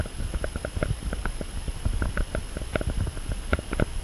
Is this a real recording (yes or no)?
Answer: yes